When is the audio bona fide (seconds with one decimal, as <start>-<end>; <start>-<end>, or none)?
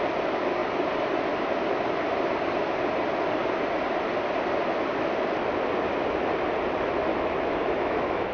0.0-7.1